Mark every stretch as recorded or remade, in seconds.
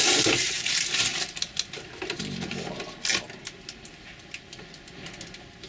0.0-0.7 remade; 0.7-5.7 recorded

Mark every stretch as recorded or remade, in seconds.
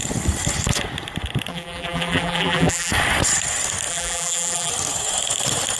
0.0-1.5 recorded; 1.5-2.9 remade; 2.9-3.9 recorded; 3.9-4.7 remade; 4.7-5.8 recorded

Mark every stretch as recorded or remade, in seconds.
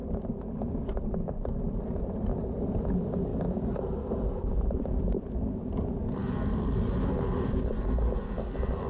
0.0-1.0 recorded; 1.0-3.3 remade; 3.3-3.8 recorded; 3.8-8.9 remade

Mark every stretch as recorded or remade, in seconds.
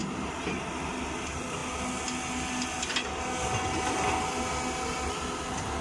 0.0-0.8 recorded; 0.8-1.6 remade; 1.6-5.1 recorded; 5.1-5.8 remade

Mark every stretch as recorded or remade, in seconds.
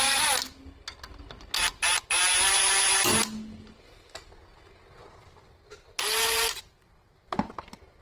0.0-8.0 recorded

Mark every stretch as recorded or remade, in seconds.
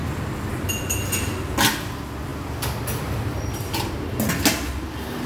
0.0-0.5 remade; 0.5-5.3 recorded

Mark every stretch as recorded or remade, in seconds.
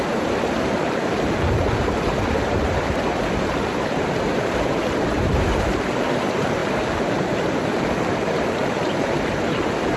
0.0-10.0 remade